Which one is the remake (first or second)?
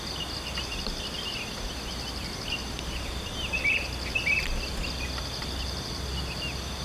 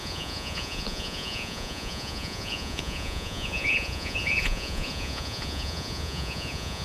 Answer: second